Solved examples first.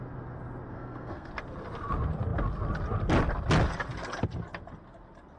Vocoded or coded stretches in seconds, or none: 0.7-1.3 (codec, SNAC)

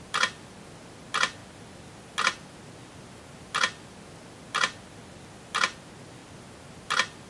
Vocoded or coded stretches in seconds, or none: none